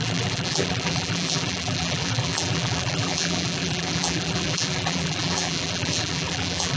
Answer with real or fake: fake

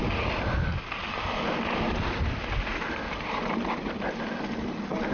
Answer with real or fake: real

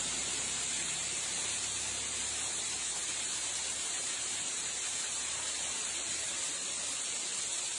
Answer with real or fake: fake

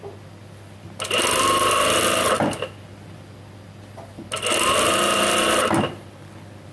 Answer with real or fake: real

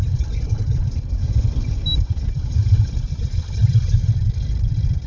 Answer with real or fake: real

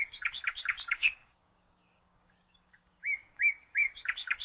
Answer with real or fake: fake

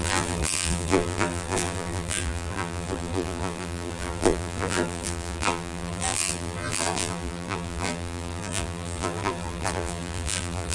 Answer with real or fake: fake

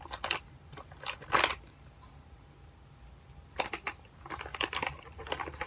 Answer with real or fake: real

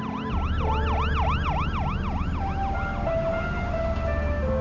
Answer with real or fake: real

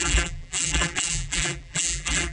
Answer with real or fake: fake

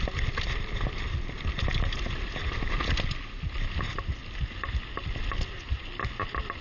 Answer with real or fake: real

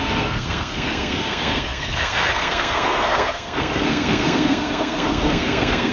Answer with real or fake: fake